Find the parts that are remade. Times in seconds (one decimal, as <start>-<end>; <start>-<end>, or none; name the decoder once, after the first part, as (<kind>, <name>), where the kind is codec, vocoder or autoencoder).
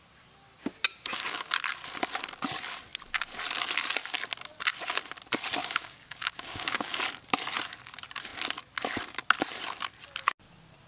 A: 0.9-1.5 (codec, DAC); 5.6-7.0